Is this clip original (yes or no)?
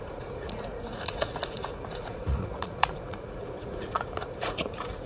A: no